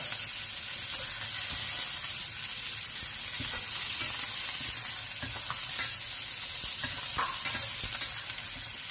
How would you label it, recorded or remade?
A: recorded